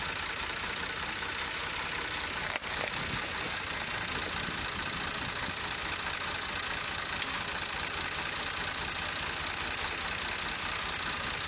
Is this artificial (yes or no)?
no